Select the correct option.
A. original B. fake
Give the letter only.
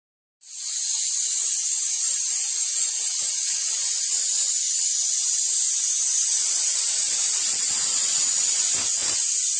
A